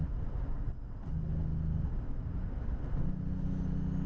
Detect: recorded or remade recorded